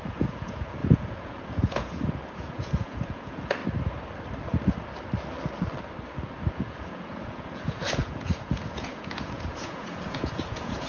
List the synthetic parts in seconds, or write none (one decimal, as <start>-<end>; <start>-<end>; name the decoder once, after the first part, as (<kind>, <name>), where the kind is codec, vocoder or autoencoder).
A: 0.0-3.6 (vocoder, Vocos); 6.5-10.9